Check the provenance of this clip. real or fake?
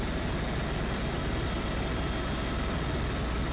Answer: real